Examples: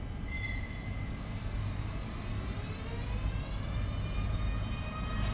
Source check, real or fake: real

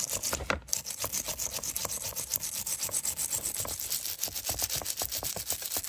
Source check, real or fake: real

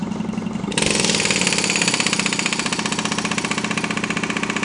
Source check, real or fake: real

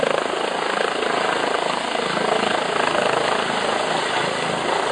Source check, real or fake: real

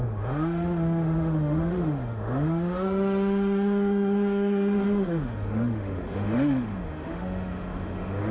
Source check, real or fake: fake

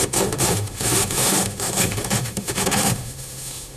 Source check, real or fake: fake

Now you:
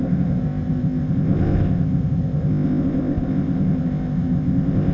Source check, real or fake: fake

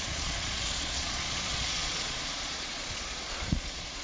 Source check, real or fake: fake